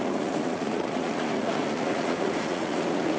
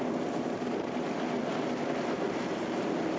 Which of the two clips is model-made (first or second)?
first